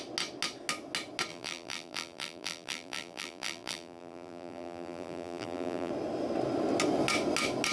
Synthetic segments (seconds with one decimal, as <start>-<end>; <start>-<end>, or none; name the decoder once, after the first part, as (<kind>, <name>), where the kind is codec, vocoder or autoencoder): 1.3-5.9 (vocoder, BigVGAN v2)